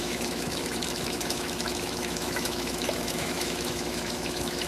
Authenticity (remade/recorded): remade